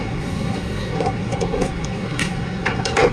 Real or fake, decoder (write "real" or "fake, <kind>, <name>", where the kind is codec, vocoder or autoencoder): fake, codec, SNAC